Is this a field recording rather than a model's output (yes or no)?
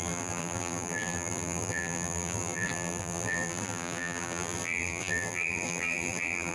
no